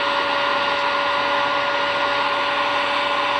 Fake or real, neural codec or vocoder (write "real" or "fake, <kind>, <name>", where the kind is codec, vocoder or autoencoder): real